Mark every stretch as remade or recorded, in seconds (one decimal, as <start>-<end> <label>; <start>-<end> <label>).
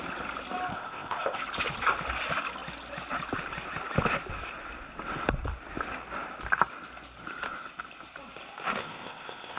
0.0-0.7 recorded; 0.7-1.4 remade; 1.4-8.8 recorded; 8.8-9.6 remade